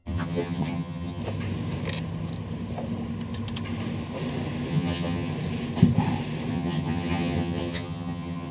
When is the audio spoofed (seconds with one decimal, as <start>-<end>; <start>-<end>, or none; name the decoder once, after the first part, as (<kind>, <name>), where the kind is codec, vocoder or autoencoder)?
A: 0.0-1.2 (vocoder, HiFi-GAN); 4.7-5.3; 6.5-8.5

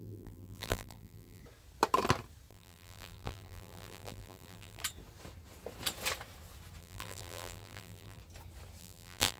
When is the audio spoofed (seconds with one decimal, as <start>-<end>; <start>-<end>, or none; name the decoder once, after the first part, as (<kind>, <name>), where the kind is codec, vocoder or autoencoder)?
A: 0.0-1.4 (vocoder, BigVGAN v2); 2.5-4.8; 6.8-8.2; 8.8-9.4

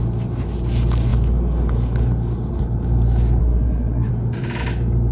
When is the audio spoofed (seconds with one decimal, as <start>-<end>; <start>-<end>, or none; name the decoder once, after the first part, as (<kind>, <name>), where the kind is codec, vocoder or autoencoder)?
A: 3.4-4.1 (codec, SNAC)

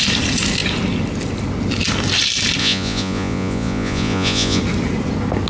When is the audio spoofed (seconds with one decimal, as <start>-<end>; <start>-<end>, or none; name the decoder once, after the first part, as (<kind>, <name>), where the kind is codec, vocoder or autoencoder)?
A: 2.6-4.6 (vocoder, Vocos)

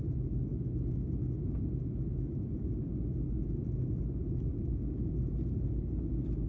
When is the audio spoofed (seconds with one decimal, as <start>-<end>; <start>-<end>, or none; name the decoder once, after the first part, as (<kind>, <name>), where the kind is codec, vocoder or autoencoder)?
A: 4.5-5.1 (codec, DAC)

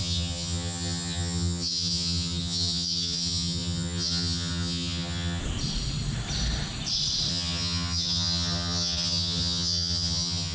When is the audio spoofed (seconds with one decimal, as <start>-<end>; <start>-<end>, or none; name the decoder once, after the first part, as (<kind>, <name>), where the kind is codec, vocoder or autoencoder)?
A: 0.0-5.4 (vocoder, HiFi-GAN); 7.3-10.5

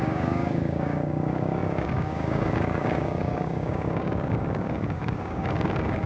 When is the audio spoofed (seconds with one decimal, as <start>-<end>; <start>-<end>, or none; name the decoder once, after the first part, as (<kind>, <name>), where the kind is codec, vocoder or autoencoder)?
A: 0.0-6.1 (codec, DAC)

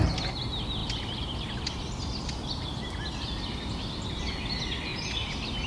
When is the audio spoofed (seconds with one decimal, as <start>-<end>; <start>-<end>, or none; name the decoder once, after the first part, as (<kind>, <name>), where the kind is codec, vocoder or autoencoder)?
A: none